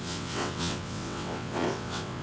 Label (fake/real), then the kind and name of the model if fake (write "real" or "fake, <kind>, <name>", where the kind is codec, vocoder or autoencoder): fake, vocoder, WaveNeXt